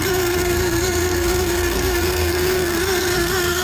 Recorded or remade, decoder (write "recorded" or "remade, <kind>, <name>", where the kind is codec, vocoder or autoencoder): remade, codec, SNAC